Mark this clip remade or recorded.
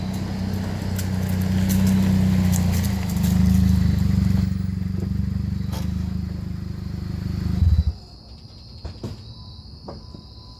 recorded